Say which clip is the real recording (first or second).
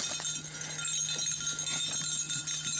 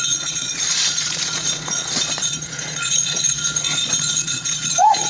first